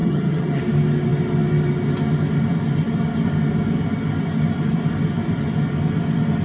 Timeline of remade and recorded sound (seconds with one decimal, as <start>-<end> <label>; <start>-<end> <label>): 0.0-0.6 remade; 0.6-6.4 recorded